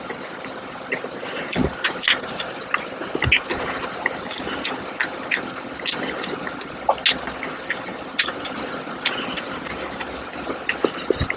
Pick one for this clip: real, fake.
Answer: real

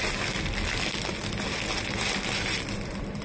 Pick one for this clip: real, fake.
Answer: real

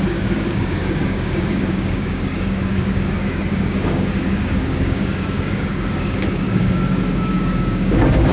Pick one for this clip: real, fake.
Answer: fake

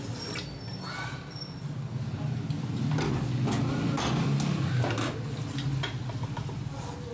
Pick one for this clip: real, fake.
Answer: real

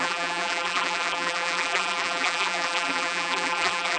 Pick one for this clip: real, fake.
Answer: fake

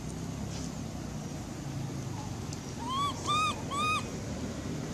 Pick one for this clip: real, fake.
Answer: real